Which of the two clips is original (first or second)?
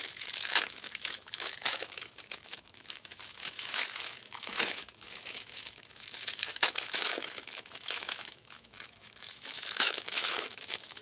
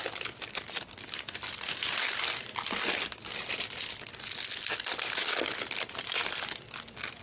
second